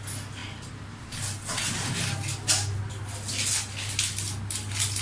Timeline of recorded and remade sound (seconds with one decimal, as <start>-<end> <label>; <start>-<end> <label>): 0.0-5.0 recorded